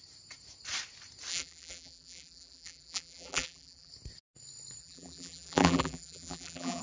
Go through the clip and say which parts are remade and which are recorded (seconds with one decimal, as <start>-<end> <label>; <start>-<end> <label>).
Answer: 0.0-1.3 recorded; 1.3-3.9 remade; 3.9-4.8 recorded; 4.8-6.8 remade